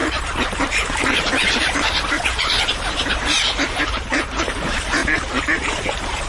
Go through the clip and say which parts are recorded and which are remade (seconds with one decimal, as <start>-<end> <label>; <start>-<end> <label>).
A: 0.0-6.3 remade